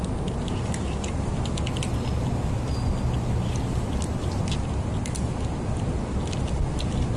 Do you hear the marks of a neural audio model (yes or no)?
no